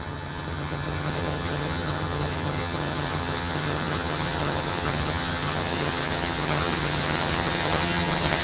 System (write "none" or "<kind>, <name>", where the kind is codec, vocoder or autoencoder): vocoder, HiFi-GAN